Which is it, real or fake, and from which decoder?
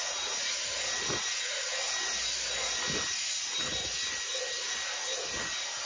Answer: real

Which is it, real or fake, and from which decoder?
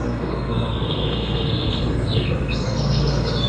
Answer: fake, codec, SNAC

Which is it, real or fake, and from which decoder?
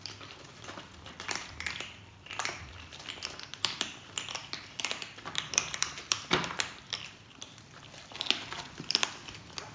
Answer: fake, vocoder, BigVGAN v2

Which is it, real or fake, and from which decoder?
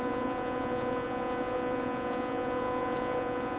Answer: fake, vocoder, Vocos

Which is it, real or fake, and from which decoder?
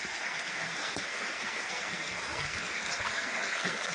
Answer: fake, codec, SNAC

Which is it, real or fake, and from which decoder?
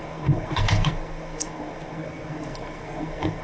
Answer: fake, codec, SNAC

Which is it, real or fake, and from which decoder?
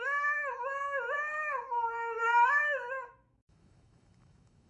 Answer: fake, autoencoder, DAC-VAE